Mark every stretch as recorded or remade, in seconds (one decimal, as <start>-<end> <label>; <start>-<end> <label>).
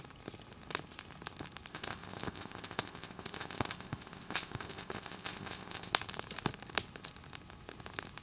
0.0-1.7 recorded; 1.7-5.9 remade; 5.9-8.2 recorded